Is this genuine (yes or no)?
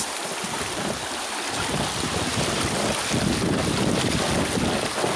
yes